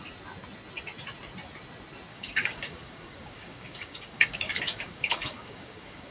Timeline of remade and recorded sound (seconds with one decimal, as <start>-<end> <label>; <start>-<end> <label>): 0.0-2.1 recorded; 2.1-6.1 remade